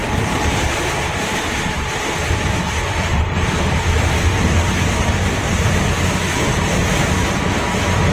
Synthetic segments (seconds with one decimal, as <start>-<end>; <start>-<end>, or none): 0.0-1.9; 3.1-5.5